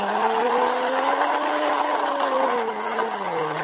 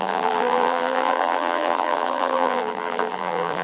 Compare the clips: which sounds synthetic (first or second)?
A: second